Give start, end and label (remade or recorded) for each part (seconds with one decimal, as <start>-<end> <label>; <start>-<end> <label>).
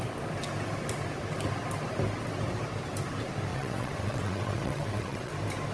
0.0-3.5 recorded; 3.5-5.3 remade; 5.3-5.7 recorded